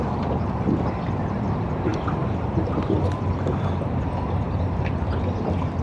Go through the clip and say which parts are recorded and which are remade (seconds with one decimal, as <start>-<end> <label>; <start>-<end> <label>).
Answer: 0.0-1.9 recorded; 1.9-4.9 remade; 4.9-5.8 recorded